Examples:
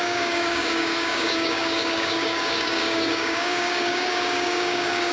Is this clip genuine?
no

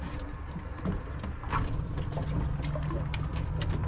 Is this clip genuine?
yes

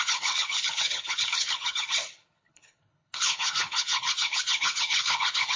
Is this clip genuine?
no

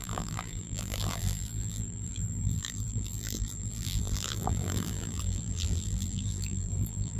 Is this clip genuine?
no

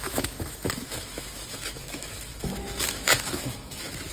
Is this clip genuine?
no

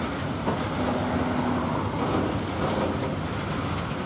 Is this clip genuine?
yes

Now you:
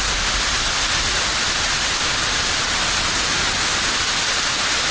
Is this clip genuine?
yes